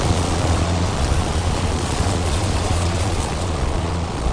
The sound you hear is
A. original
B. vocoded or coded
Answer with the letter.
B